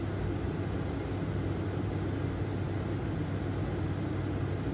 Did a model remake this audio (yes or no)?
no